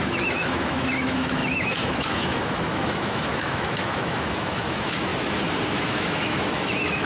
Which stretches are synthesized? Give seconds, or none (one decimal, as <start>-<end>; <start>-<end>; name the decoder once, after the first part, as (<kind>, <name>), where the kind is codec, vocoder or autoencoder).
0.0-5.1 (autoencoder, DAC-VAE); 5.7-7.1